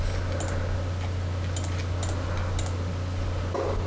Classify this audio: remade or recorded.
recorded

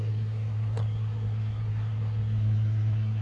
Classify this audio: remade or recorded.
remade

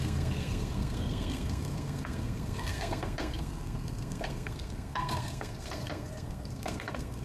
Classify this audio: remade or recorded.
remade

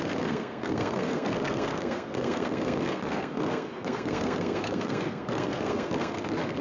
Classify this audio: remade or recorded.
remade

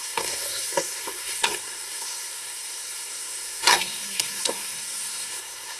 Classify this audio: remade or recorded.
remade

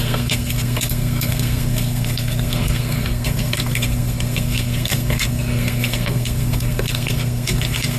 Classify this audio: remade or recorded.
remade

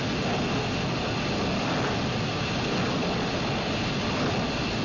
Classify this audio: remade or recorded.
recorded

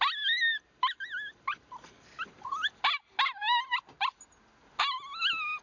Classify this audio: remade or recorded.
recorded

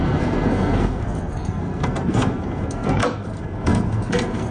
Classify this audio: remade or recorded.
remade